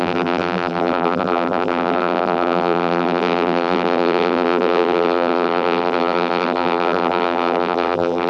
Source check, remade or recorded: remade